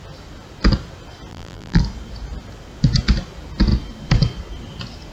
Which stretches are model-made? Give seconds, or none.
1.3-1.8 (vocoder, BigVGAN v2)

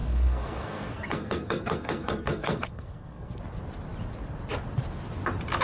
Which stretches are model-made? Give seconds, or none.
0.0-3.4 (codec, SNAC)

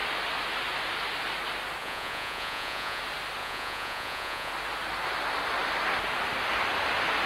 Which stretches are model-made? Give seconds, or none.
1.8-3.0 (vocoder, Vocos); 3.4-4.5

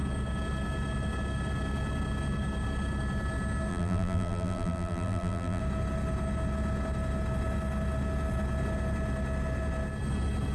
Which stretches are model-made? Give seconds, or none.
3.7-5.6 (vocoder, BigVGAN v2)

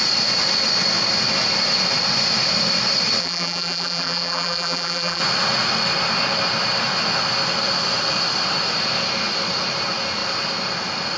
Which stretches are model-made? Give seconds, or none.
3.2-5.2 (vocoder, BigVGAN v2)